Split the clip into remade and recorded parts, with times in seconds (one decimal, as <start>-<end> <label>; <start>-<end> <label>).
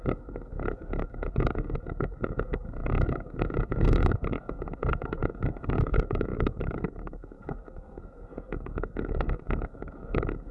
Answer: 0.0-10.5 remade